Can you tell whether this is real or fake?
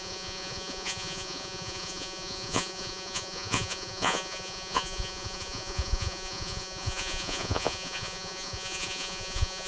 fake